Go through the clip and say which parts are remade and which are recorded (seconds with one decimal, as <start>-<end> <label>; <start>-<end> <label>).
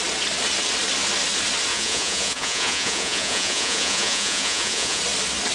0.0-1.7 recorded; 1.7-5.0 remade; 5.0-5.5 recorded